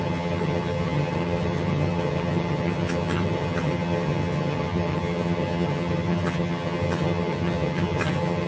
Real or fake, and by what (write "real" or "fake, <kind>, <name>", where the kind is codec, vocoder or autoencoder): fake, vocoder, HiFi-GAN